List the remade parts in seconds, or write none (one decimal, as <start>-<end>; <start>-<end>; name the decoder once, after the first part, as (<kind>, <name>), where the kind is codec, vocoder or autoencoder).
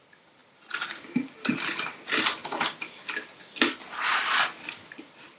none